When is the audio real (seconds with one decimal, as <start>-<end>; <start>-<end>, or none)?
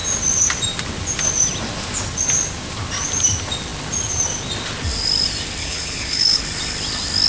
0.0-5.6; 6.4-7.3